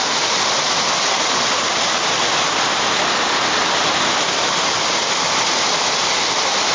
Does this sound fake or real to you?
real